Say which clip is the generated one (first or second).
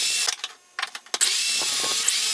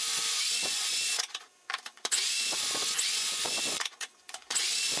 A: second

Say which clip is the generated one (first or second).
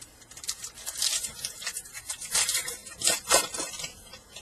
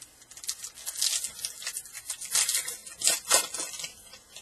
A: first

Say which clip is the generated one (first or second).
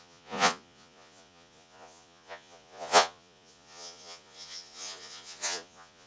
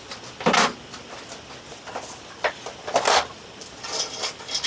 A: first